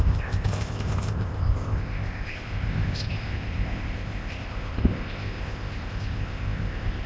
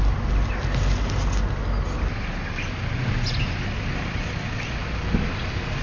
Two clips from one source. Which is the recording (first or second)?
second